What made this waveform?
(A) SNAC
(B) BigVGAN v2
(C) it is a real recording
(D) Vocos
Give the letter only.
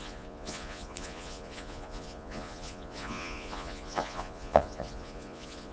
D